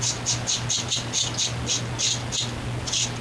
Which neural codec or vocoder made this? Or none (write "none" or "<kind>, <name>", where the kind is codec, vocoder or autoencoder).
none